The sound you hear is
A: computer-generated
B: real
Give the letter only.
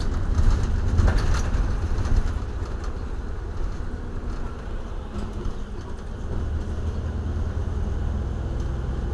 B